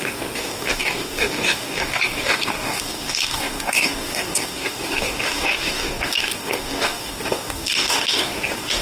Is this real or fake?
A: fake